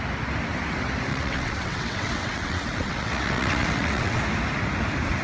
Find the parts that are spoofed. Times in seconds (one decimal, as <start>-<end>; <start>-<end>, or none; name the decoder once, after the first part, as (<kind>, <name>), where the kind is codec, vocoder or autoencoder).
1.1-4.2 (vocoder, WaveNeXt)

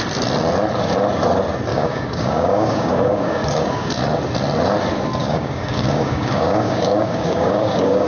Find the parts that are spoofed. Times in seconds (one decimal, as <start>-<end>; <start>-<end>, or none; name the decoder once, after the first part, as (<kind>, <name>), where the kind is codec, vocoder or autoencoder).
1.7-3.9 (codec, DAC); 5.2-8.1

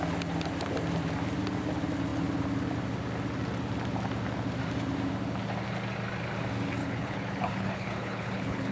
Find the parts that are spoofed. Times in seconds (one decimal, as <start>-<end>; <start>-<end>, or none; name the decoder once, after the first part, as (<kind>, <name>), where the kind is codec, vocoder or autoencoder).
6.8-8.7 (codec, HILCodec)

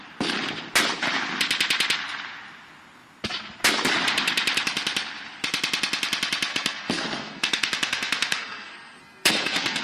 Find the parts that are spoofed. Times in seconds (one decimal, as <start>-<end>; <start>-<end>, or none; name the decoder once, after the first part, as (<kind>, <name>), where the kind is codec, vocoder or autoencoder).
6.5-9.8 (codec, SNAC)